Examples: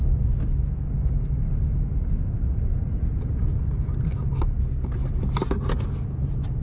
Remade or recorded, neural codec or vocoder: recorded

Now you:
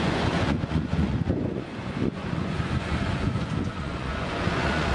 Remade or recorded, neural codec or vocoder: remade, vocoder, Vocos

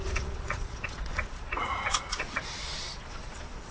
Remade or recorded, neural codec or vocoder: remade, vocoder, Vocos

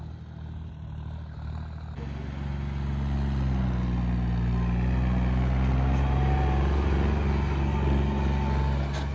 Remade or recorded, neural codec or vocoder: recorded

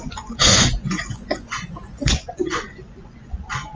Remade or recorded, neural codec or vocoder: remade, vocoder, Vocos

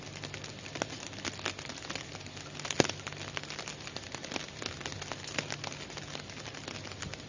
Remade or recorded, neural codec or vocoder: recorded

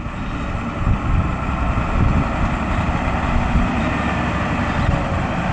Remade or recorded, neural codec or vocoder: recorded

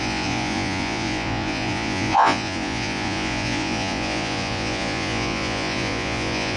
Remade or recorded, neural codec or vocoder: remade, vocoder, Vocos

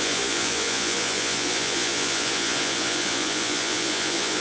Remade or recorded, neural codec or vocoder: remade, vocoder, Vocos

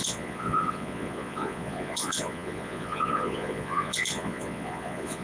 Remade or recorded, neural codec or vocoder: remade, vocoder, Vocos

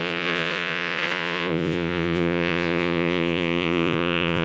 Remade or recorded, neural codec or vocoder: remade, vocoder, Vocos